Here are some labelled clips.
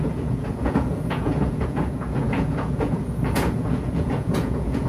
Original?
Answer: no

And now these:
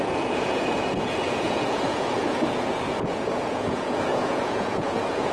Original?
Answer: no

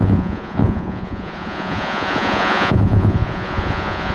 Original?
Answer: no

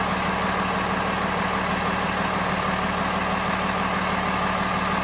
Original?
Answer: yes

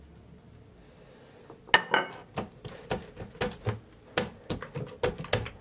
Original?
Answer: yes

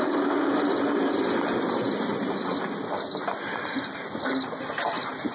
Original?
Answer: yes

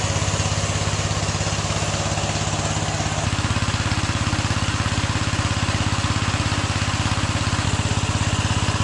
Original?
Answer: yes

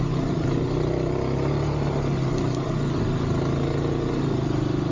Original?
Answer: yes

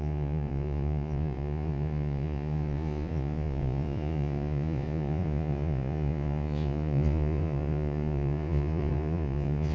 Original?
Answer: no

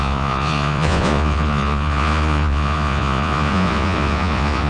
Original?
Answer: no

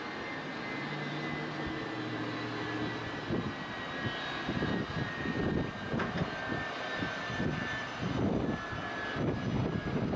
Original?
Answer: yes